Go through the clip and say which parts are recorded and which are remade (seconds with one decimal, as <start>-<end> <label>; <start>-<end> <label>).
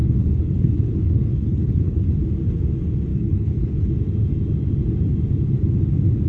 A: 0.0-2.1 remade; 2.1-3.1 recorded; 3.1-3.9 remade; 3.9-6.3 recorded